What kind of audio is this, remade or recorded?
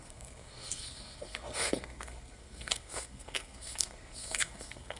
remade